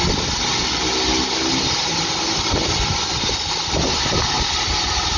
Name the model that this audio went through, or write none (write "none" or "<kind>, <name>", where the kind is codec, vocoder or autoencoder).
none